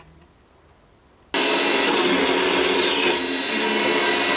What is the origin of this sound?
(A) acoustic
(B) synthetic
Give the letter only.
A